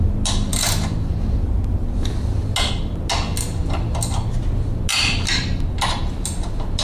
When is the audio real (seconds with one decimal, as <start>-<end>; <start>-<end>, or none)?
0.0-6.8